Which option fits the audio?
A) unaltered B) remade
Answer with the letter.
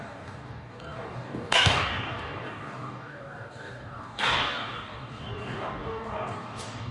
B